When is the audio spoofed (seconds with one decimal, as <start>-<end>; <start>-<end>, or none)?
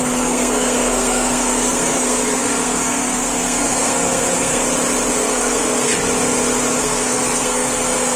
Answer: 0.0-4.6; 5.1-5.9; 6.8-8.2